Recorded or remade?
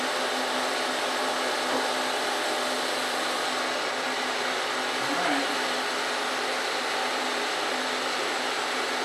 recorded